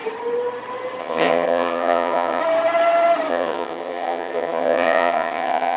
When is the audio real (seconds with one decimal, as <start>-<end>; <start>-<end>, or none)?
0.0-1.0; 2.4-3.3